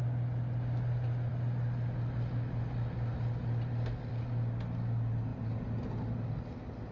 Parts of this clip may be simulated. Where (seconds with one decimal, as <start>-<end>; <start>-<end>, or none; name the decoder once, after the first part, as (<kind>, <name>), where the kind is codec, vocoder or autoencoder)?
none